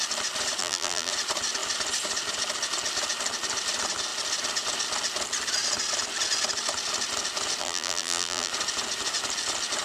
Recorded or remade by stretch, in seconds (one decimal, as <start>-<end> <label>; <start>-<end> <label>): 0.0-0.6 recorded; 0.6-1.1 remade; 1.1-7.6 recorded; 7.6-8.5 remade; 8.5-9.8 recorded